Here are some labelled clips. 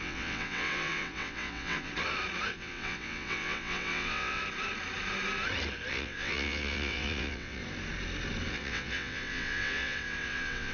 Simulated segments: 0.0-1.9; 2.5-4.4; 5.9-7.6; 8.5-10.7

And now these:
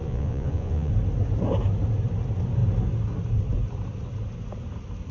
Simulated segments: 0.0-0.9